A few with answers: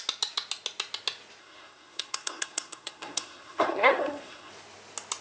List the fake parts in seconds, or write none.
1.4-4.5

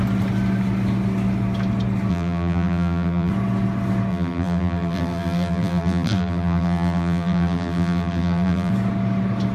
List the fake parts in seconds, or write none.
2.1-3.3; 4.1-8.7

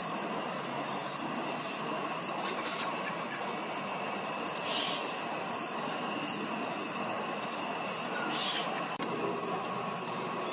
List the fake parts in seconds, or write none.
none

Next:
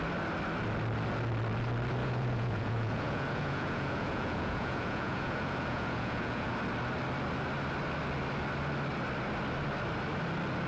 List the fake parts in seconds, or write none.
2.0-6.5

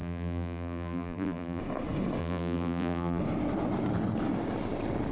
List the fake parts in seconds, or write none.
0.0-1.6; 2.2-3.2